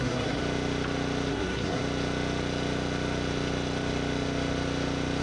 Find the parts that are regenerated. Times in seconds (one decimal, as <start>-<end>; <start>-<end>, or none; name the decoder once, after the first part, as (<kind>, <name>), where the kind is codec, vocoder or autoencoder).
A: 0.0-0.4 (codec, SNAC); 1.3-1.8